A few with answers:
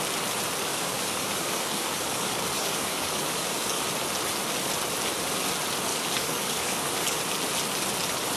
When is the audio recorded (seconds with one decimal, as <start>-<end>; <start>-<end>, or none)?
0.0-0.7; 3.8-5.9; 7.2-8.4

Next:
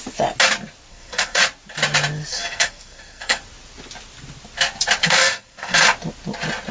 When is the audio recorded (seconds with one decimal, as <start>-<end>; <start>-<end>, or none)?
0.0-0.9; 1.4-2.3; 3.4-5.0; 5.8-6.7

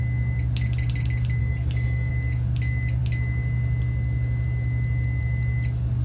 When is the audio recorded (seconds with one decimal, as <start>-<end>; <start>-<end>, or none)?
0.0-1.4; 2.1-6.0

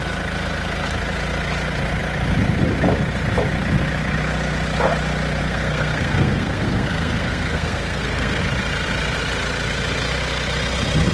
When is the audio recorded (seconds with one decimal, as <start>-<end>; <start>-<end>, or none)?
0.0-5.4; 8.4-11.1